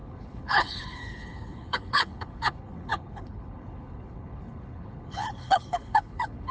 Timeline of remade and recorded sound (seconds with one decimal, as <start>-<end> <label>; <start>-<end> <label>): 0.0-6.5 remade